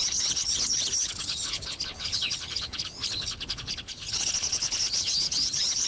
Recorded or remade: remade